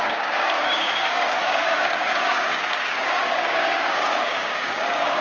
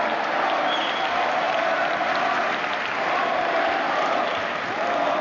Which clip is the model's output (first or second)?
first